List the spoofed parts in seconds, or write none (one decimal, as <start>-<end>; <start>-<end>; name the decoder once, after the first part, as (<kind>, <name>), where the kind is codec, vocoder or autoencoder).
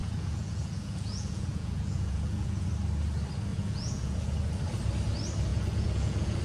0.0-2.7 (vocoder, Vocos); 3.5-4.2; 5.5-6.4